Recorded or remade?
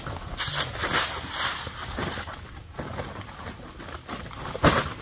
recorded